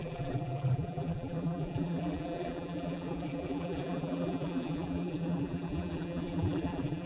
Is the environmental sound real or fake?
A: fake